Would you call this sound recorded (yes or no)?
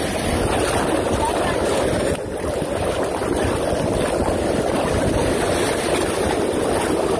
yes